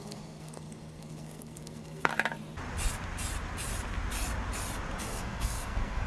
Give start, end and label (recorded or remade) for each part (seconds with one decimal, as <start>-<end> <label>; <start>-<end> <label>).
0.0-2.1 remade; 2.1-5.0 recorded; 5.0-6.1 remade